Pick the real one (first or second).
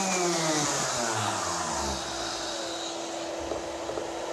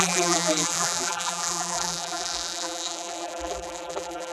first